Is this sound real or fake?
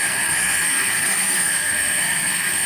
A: fake